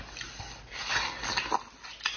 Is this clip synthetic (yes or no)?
no